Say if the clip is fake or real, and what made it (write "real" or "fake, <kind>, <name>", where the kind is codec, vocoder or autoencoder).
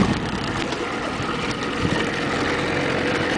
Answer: real